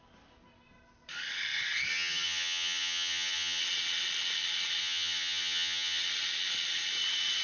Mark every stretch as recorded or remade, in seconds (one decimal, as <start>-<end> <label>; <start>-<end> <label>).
0.0-1.9 recorded; 1.9-3.6 remade; 3.6-4.8 recorded; 4.8-6.0 remade; 6.0-7.4 recorded